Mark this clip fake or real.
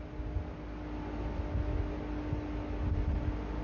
real